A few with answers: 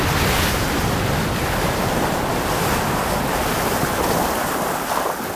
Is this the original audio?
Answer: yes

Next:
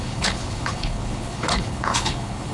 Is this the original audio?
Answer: no